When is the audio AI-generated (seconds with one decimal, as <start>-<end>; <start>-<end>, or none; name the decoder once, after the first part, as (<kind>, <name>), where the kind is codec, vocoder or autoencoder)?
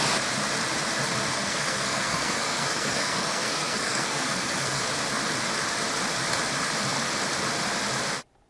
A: 1.3-4.8 (codec, SNAC)